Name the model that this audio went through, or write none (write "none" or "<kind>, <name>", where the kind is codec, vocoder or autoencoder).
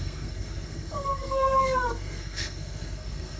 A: codec, SNAC